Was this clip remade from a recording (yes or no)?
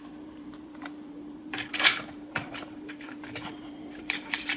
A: yes